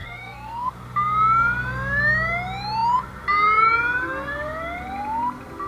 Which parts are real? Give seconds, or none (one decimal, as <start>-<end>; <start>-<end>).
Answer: 0.7-5.7